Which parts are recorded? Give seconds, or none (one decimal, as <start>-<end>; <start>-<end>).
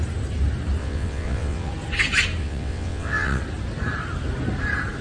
0.0-0.8; 1.7-2.4; 3.4-5.0